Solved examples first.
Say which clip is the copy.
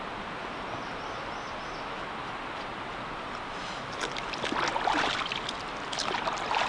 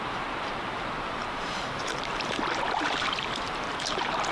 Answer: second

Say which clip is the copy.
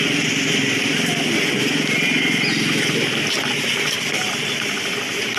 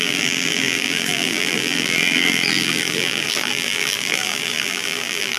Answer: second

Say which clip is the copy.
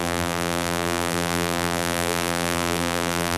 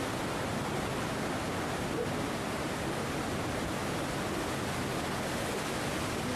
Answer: first